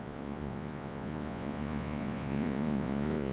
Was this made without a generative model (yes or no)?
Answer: no